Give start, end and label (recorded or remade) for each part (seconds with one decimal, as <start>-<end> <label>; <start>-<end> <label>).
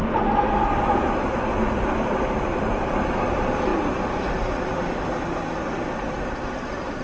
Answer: 0.0-3.7 remade; 3.7-5.0 recorded; 5.0-7.0 remade